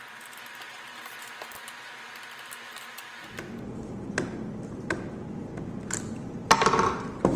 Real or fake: real